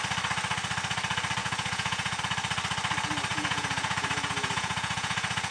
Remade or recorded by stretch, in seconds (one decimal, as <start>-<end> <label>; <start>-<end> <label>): 0.0-1.4 recorded; 1.4-2.2 remade; 2.2-3.3 recorded; 3.3-5.5 remade